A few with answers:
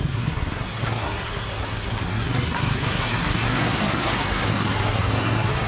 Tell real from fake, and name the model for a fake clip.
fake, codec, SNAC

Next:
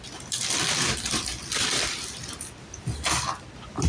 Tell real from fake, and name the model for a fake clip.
real